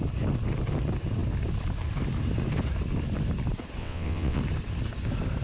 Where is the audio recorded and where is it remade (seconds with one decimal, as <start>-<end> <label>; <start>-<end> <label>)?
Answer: 0.0-3.8 recorded; 3.8-4.4 remade; 4.4-5.4 recorded